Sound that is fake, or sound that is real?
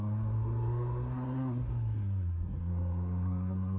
fake